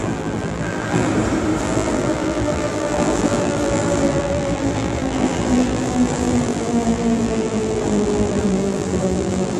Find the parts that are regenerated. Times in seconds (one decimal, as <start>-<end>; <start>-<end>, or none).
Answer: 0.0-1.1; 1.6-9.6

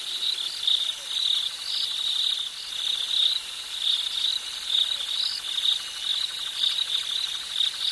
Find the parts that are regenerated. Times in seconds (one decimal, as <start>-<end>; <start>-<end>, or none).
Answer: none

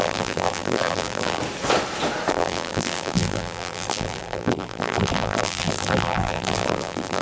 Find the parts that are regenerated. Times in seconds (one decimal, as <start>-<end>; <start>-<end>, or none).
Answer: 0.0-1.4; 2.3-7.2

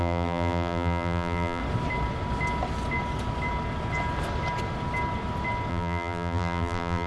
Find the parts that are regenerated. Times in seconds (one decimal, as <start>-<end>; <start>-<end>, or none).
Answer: 0.0-1.6; 5.7-7.1

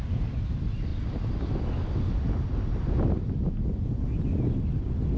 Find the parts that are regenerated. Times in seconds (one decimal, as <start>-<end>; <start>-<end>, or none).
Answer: none

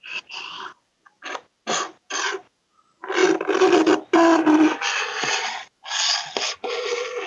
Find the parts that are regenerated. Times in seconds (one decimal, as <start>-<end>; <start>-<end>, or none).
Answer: 0.0-3.2; 5.7-6.6

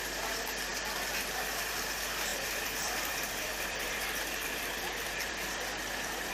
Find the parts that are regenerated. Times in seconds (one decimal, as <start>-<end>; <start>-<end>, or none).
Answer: 2.3-6.3